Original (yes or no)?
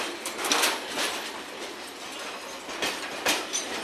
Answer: yes